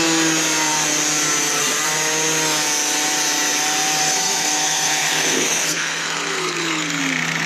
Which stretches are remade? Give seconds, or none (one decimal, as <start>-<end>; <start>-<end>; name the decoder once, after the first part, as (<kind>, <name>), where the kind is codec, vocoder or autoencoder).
4.0-7.0 (codec, SNAC)